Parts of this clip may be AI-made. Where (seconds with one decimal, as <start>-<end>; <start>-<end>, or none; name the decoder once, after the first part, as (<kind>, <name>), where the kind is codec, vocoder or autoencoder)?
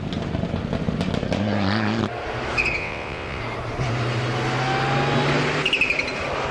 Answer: 2.8-3.4 (vocoder, WaveNeXt)